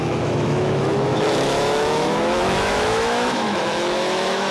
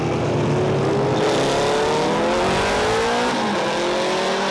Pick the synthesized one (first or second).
first